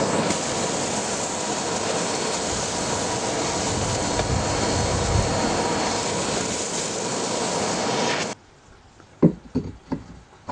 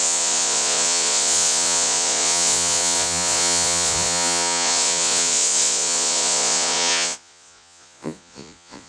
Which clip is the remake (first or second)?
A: second